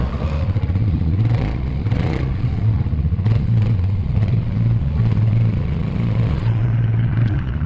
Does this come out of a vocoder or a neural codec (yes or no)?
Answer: yes